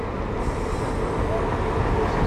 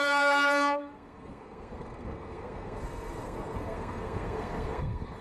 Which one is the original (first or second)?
first